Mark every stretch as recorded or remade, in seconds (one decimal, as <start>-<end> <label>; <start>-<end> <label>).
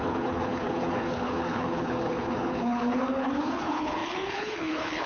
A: 0.0-5.1 remade